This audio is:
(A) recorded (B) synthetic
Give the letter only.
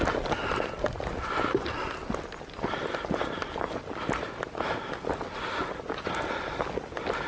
A